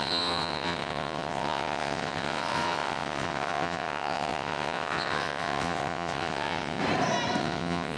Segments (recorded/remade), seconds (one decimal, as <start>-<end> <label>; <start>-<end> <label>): 0.0-6.8 remade; 6.8-7.4 recorded; 7.4-8.0 remade